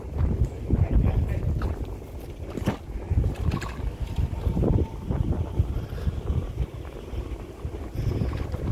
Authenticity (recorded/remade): recorded